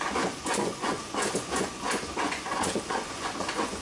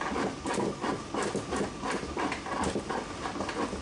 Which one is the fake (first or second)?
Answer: first